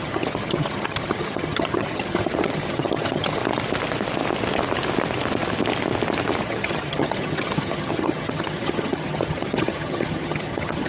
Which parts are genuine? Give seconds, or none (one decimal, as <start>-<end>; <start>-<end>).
3.4-6.4